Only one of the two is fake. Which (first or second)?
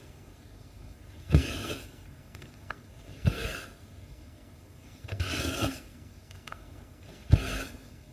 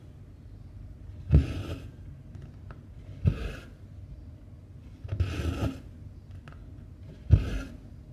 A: first